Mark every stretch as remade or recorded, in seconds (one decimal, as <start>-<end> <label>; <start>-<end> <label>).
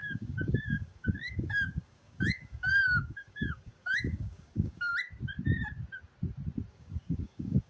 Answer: 0.0-4.9 remade; 4.9-6.7 recorded; 6.7-7.7 remade